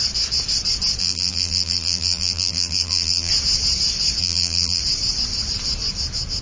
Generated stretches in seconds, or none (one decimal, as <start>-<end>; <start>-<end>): 1.0-3.3; 4.2-4.8